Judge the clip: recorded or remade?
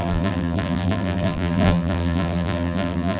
remade